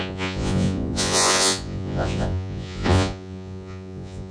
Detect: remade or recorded remade